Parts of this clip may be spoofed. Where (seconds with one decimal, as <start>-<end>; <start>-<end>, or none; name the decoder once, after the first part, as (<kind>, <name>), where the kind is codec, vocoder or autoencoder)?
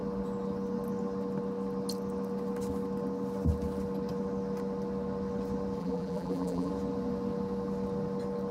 5.8-6.7 (vocoder, BigVGAN v2)